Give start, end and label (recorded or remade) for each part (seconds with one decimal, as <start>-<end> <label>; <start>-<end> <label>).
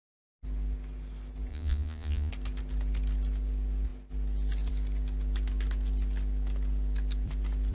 0.0-1.5 recorded; 1.5-2.3 remade; 2.3-7.7 recorded